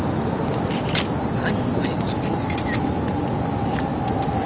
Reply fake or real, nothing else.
real